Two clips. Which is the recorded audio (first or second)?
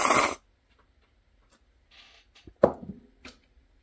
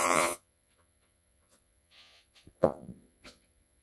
first